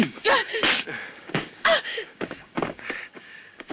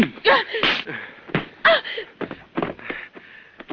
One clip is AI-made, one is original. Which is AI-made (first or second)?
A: first